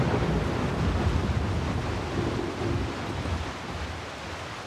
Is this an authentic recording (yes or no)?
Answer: yes